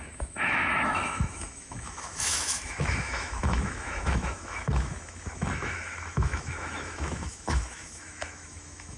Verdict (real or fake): fake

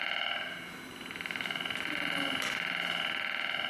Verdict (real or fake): real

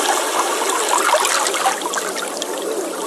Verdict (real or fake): real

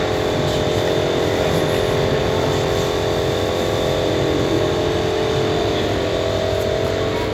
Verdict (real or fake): real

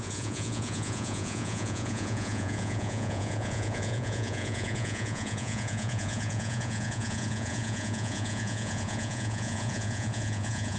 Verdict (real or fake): fake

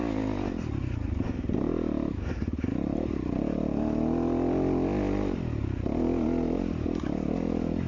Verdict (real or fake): real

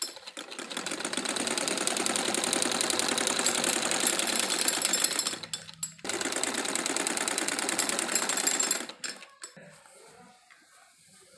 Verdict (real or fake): real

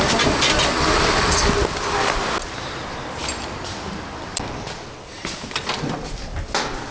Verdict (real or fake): real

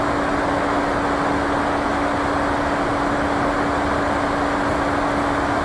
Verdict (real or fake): real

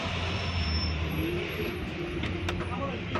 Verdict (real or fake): real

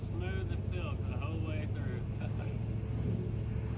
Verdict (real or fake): real